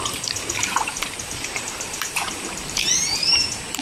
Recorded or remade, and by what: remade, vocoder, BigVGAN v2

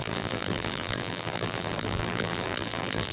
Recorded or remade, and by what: remade, vocoder, BigVGAN v2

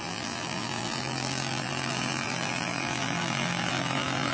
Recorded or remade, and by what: remade, vocoder, BigVGAN v2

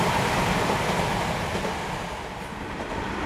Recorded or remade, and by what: recorded